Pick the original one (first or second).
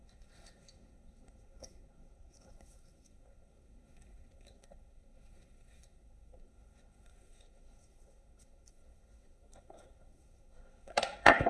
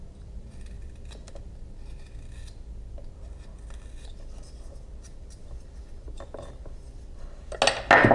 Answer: second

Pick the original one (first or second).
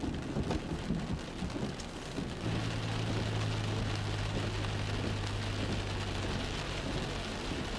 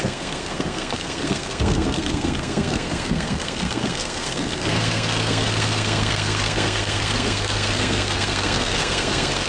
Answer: first